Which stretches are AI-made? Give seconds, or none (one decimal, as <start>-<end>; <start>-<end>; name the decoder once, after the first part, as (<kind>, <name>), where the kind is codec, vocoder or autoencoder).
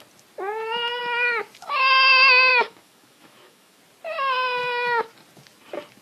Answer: 2.5-3.8 (autoencoder, DAC-VAE)